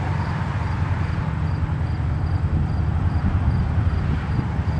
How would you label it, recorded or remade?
recorded